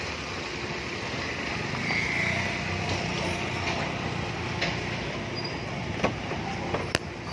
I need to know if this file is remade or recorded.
recorded